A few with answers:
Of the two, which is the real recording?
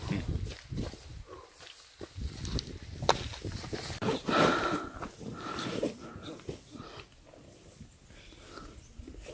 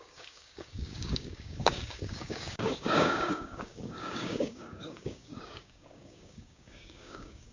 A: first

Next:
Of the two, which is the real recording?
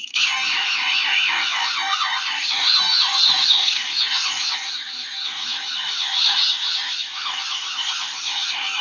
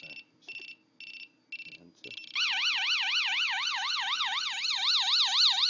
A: second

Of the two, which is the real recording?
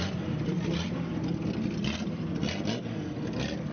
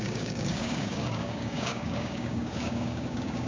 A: first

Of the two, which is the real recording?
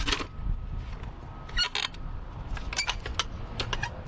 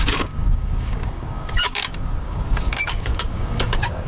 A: first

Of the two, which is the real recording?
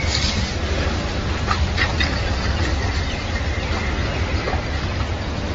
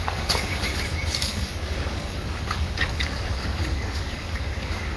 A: first